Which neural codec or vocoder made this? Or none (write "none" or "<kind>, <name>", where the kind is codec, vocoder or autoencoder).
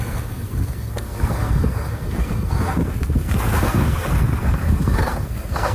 codec, SNAC